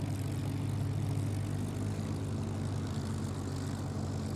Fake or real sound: real